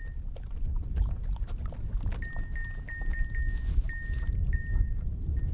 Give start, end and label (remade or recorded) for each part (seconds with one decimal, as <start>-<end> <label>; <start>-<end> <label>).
0.0-2.6 recorded; 2.6-3.2 remade; 3.2-5.5 recorded